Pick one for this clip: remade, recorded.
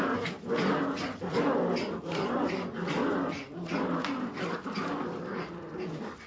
recorded